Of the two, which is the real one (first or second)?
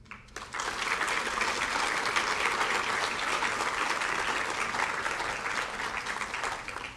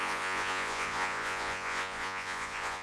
first